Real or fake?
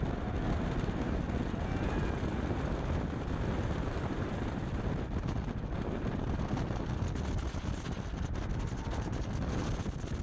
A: real